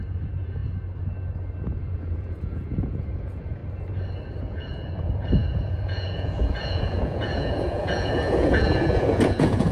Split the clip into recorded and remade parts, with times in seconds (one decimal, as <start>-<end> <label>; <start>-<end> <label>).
0.0-0.6 remade; 0.6-1.8 recorded; 1.8-3.6 remade; 3.6-4.4 recorded; 4.4-9.7 remade